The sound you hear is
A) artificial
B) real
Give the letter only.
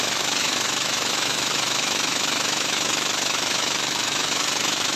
A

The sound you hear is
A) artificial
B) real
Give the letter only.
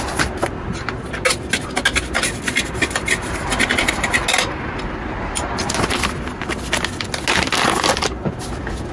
B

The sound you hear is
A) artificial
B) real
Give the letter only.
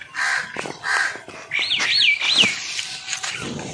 B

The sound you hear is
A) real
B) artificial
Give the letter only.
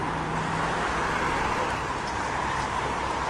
A